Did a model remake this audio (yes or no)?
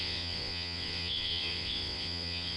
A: yes